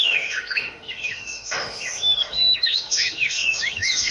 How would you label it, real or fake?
fake